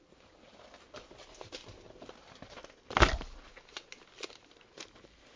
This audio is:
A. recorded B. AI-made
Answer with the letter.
A